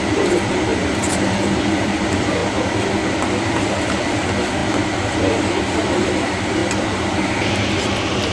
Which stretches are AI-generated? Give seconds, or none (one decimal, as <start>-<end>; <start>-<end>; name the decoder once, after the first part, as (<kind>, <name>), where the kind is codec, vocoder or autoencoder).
0.0-2.4 (vocoder, BigVGAN v2); 3.1-4.6; 5.5-6.6; 7.2-8.3